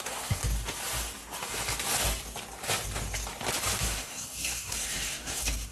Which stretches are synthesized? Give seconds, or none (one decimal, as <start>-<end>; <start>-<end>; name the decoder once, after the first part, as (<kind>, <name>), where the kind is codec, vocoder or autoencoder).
0.0-0.4 (codec, SNAC); 3.8-5.7